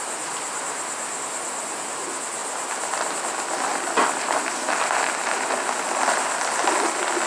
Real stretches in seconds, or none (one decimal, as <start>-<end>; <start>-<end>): 0.0-2.4; 3.2-3.7; 4.2-7.3